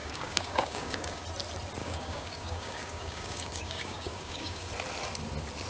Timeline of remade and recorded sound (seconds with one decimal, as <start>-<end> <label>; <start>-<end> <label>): 0.0-1.2 remade; 1.2-1.8 recorded; 1.8-4.7 remade; 4.7-5.7 recorded